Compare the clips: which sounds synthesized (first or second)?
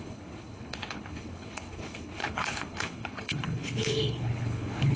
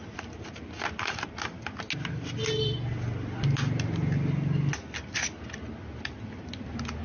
first